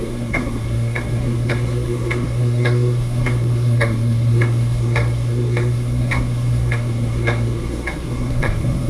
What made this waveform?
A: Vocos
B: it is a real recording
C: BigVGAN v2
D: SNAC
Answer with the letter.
D